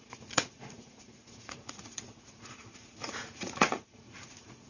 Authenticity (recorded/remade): remade